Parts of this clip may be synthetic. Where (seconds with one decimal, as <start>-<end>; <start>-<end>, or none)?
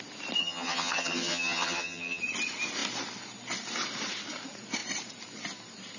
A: 0.4-2.2